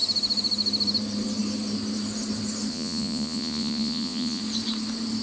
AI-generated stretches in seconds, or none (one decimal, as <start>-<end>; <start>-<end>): 2.7-4.4